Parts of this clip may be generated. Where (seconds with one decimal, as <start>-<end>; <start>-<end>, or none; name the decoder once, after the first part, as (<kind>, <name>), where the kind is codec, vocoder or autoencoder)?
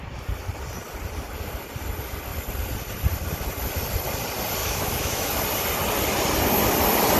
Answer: 4.6-5.4 (autoencoder, DAC-VAE)